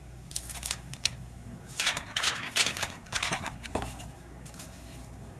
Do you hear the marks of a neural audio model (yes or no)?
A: yes